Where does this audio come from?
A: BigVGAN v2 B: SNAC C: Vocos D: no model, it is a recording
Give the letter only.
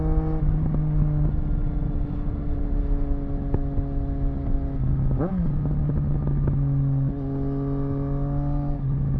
D